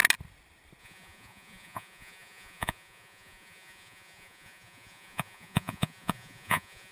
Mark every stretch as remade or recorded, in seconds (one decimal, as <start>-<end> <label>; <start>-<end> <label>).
0.0-0.8 recorded; 0.8-6.9 remade